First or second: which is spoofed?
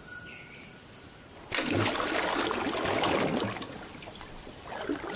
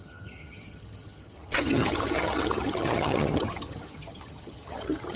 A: second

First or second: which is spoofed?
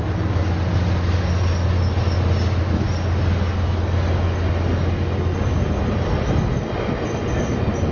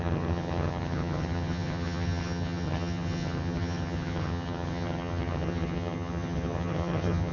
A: second